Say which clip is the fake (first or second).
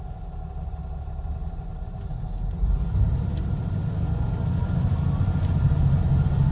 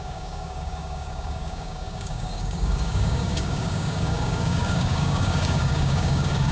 second